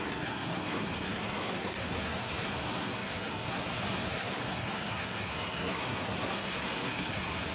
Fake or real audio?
fake